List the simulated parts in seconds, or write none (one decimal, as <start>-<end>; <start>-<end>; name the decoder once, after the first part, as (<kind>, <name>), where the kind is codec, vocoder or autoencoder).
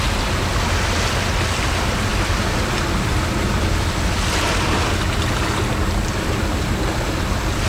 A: none